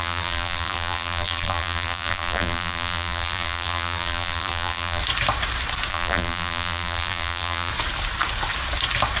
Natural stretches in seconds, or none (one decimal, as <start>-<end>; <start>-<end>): 5.0-5.9; 7.7-9.2